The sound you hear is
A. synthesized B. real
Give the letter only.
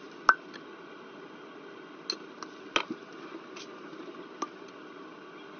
B